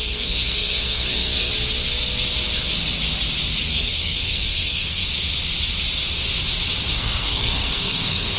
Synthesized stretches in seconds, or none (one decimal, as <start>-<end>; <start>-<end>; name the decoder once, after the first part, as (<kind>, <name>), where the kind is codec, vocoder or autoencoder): 0.0-1.5 (codec, SNAC); 3.7-5.0; 6.9-8.4